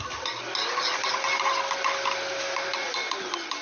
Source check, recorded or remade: recorded